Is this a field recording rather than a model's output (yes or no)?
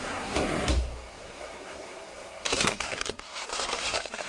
no